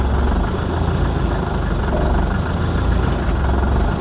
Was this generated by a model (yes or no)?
no